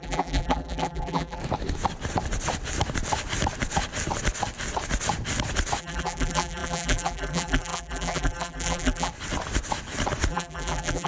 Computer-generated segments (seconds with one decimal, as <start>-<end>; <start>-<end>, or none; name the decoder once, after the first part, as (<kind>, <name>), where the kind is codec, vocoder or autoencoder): 0.0-1.4 (vocoder, BigVGAN v2); 5.8-9.1; 10.3-11.1